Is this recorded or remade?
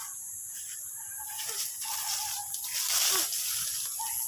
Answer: recorded